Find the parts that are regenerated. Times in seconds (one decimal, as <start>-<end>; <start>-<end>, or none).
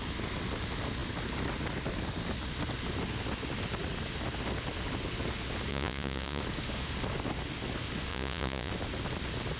5.7-6.4; 8.1-8.7